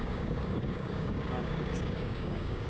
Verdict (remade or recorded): remade